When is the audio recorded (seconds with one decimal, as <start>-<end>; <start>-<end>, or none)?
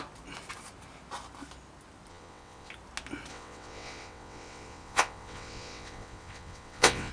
0.0-2.1; 2.7-3.3